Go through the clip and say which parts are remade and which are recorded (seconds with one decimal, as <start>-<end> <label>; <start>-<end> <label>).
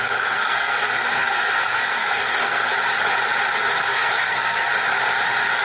0.0-2.7 remade; 2.7-3.5 recorded; 3.5-4.7 remade; 4.7-5.6 recorded